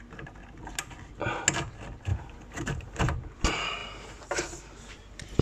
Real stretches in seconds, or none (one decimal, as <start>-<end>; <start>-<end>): 0.0-2.1; 3.0-3.8